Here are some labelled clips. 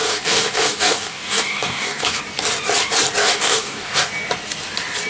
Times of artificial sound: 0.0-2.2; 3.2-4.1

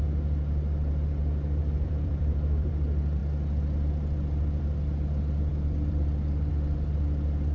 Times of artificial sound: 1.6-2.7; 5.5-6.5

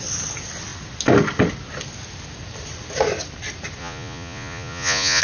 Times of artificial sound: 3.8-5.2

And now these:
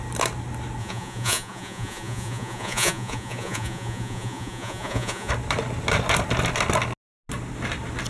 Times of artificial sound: 0.8-5.3